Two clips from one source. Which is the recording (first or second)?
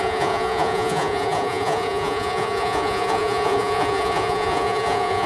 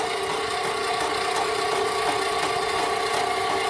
second